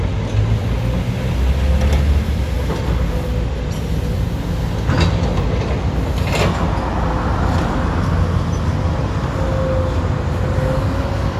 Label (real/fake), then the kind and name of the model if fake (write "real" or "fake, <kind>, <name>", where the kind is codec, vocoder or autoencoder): real